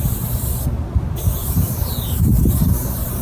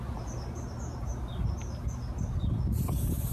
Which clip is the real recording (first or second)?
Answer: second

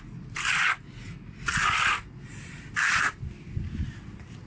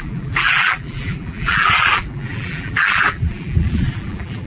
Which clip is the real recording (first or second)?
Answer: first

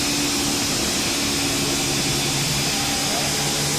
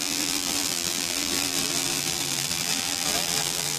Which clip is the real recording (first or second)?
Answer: first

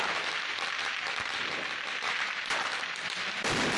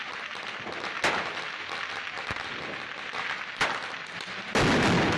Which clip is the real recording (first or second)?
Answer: second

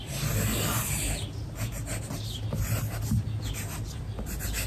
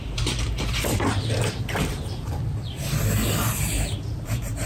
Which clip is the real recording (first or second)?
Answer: first